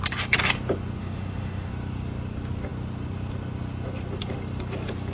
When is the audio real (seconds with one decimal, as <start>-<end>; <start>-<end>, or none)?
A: 0.0-1.0; 1.7-5.1